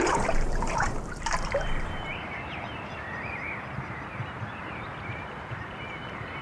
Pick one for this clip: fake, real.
fake